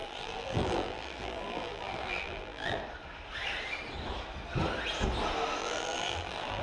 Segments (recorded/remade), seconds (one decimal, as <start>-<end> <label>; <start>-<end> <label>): 0.0-2.8 remade; 2.8-5.6 recorded; 5.6-6.6 remade